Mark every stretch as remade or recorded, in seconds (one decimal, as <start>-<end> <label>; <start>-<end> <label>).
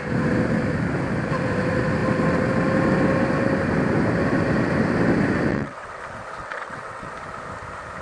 0.0-5.5 recorded; 5.5-6.0 remade; 6.0-6.4 recorded; 6.4-7.1 remade; 7.1-8.0 recorded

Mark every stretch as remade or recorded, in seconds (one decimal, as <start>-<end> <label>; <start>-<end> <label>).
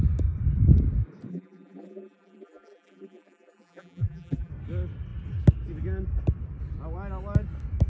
0.0-1.3 recorded; 1.3-4.5 remade; 4.5-7.9 recorded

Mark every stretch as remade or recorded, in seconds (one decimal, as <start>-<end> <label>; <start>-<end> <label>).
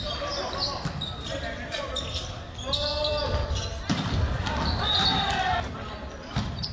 0.0-2.9 recorded; 2.9-6.7 remade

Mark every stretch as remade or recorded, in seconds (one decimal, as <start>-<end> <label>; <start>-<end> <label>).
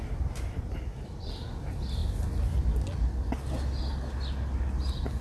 0.0-0.8 remade; 0.8-5.2 recorded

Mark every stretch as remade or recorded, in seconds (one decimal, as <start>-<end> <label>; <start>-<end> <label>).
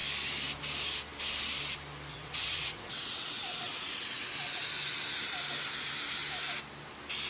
0.0-2.1 recorded; 2.1-4.6 remade; 4.6-7.3 recorded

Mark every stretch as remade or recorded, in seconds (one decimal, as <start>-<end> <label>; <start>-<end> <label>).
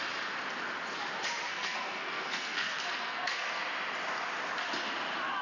0.0-1.5 recorded; 1.5-3.6 remade; 3.6-5.4 recorded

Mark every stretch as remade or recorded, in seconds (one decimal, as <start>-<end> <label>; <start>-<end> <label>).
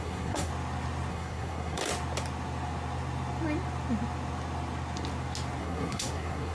0.0-0.5 remade; 0.5-1.1 recorded; 1.1-1.8 remade; 1.8-5.6 recorded; 5.6-6.5 remade